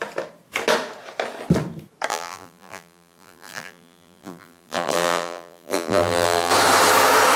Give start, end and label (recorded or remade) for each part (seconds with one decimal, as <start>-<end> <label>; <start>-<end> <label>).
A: 0.0-2.1 recorded; 2.1-6.5 remade; 6.5-7.4 recorded